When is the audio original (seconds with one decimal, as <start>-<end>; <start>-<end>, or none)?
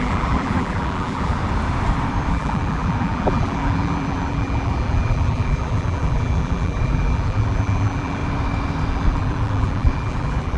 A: 1.4-2.3; 8.2-8.9